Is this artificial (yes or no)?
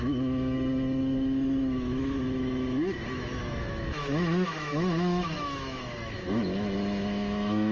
yes